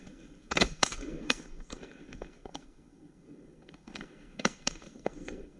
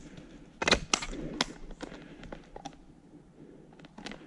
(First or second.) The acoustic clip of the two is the second